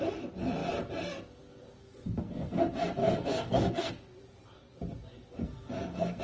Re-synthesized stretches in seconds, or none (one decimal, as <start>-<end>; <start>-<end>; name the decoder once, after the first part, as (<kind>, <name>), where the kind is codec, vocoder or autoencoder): 1.8-2.6 (codec, SNAC); 3.0-3.9; 5.4-6.2